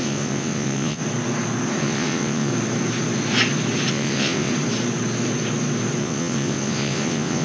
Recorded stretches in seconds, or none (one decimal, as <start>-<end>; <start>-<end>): 1.0-1.8; 2.5-3.9; 4.5-6.0